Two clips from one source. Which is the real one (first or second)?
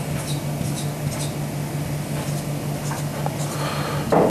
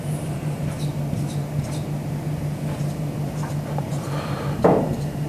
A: first